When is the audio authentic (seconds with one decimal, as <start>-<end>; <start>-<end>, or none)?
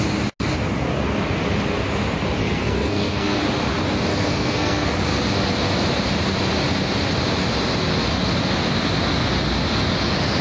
0.0-2.4; 3.4-4.1; 4.9-10.4